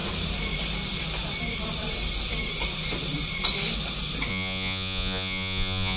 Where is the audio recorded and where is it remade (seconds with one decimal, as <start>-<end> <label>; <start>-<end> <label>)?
0.0-4.3 recorded; 4.3-6.0 remade